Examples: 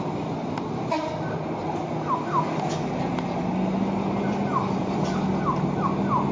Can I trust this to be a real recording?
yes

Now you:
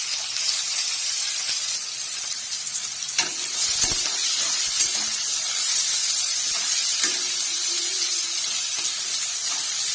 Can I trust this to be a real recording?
yes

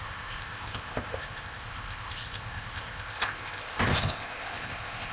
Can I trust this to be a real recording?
no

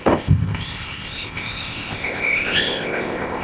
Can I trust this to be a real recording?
no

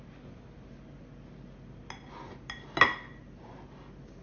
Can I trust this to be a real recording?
yes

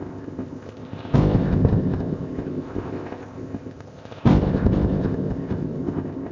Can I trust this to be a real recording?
no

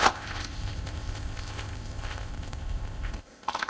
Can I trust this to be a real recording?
no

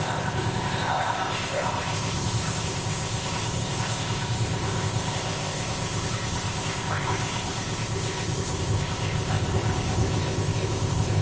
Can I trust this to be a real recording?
no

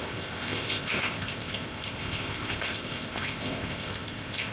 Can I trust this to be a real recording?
no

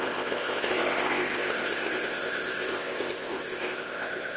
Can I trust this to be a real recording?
no